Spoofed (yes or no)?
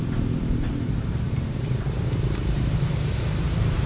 yes